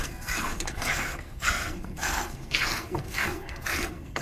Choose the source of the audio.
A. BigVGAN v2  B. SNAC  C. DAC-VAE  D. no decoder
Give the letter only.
B